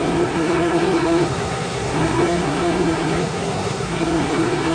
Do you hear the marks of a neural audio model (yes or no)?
yes